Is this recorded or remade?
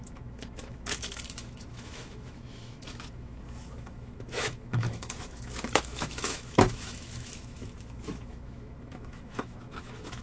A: remade